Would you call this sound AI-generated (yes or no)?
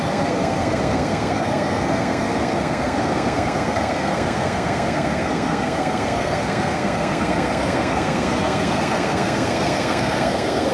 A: yes